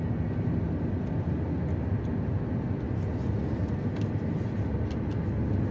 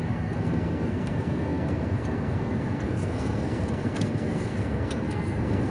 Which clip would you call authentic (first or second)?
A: first